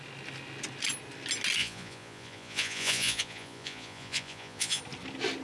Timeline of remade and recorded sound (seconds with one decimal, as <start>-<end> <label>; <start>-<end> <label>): 0.0-1.6 recorded; 1.6-4.8 remade; 4.8-5.4 recorded